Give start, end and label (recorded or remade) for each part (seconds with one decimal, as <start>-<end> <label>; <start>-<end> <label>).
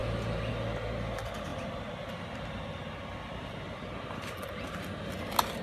0.0-5.6 recorded